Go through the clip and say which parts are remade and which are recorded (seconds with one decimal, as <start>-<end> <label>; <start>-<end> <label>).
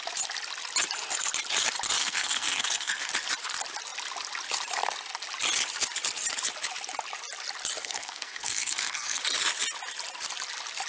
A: 0.0-2.0 recorded; 2.0-3.1 remade; 3.1-7.8 recorded; 7.8-9.2 remade; 9.2-10.9 recorded